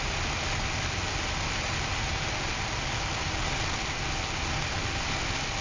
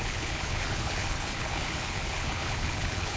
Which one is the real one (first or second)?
first